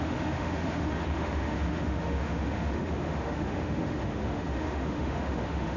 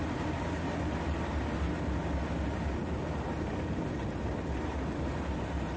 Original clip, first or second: second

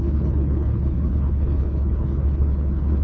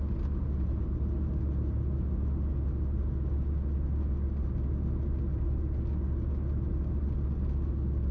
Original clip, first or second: second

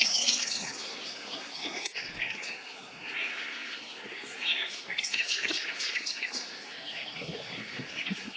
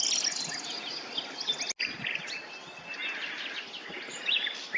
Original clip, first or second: second